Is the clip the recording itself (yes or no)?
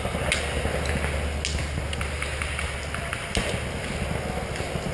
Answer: yes